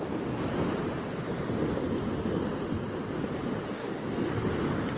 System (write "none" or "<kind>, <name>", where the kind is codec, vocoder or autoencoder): none